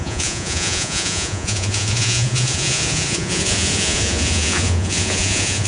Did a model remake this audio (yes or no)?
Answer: yes